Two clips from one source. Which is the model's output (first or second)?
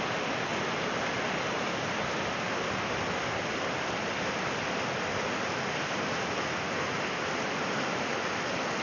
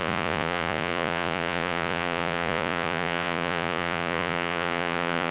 second